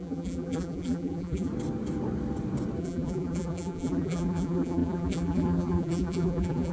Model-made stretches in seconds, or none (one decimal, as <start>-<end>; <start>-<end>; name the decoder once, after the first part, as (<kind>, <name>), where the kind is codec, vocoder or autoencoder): 0.0-1.5 (vocoder, BigVGAN v2); 2.8-6.7